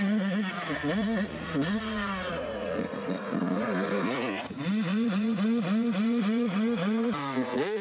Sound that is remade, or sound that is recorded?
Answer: remade